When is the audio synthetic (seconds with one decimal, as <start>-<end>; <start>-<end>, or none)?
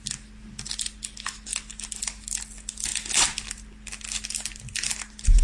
none